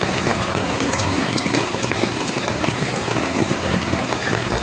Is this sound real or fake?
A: fake